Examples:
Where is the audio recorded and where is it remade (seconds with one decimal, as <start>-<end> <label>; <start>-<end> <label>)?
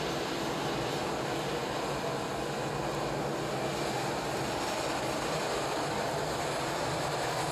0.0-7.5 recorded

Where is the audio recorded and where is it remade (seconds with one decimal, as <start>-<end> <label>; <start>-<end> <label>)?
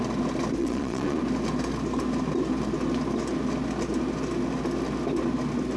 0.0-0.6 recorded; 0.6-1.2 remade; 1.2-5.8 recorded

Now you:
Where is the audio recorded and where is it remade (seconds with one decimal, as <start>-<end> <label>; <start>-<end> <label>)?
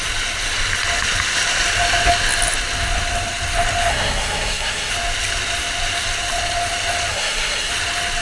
0.0-3.9 recorded; 3.9-4.9 remade; 4.9-7.1 recorded; 7.1-7.7 remade; 7.7-8.2 recorded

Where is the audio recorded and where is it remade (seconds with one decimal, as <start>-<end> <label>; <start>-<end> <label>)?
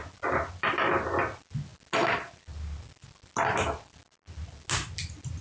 0.0-5.4 recorded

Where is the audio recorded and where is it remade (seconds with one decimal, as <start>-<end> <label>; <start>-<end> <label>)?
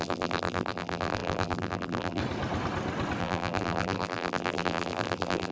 0.0-2.2 remade; 2.2-3.2 recorded; 3.2-5.5 remade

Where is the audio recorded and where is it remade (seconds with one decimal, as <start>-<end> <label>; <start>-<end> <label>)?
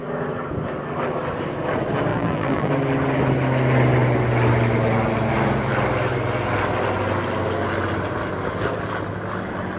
0.0-2.1 recorded; 2.1-2.7 remade; 2.7-9.8 recorded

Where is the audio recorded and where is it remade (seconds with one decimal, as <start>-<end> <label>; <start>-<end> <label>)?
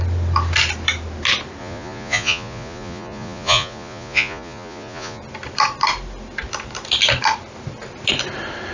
0.0-1.6 recorded; 1.6-5.2 remade; 5.2-8.7 recorded